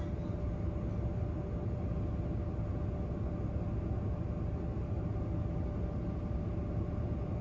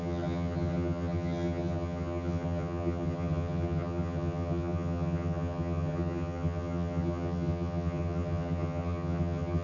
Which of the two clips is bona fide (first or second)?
first